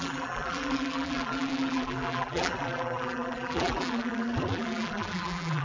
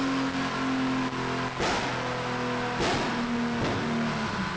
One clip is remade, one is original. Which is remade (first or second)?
first